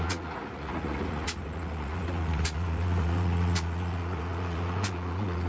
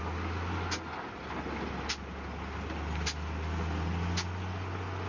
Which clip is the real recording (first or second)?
second